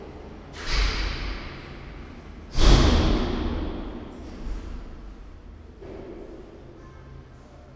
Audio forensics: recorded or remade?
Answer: recorded